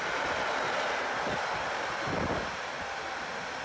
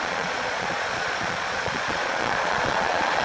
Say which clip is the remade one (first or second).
second